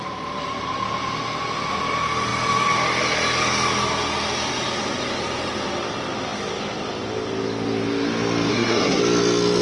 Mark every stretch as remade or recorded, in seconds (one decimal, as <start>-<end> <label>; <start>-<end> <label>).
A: 0.0-8.5 recorded; 8.5-9.0 remade; 9.0-9.6 recorded